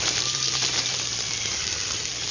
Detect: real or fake fake